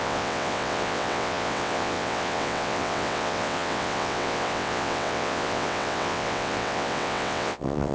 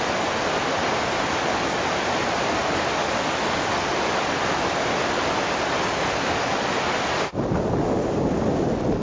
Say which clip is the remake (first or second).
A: first